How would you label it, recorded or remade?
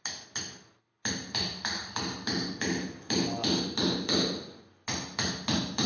recorded